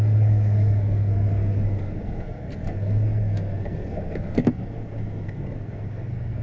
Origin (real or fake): fake